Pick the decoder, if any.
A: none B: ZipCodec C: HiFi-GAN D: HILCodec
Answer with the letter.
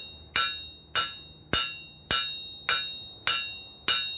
A